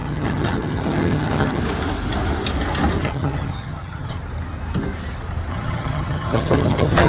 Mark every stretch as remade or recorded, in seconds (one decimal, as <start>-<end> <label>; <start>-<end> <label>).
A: 0.0-1.6 remade; 1.6-3.0 recorded; 3.0-4.2 remade; 4.2-5.5 recorded; 5.5-7.1 remade